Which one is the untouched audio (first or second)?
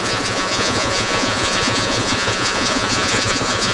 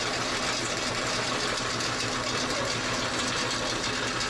second